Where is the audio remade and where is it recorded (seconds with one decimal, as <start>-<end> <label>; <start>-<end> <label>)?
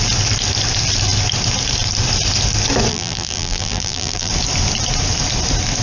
0.0-2.9 recorded; 2.9-4.3 remade; 4.3-5.8 recorded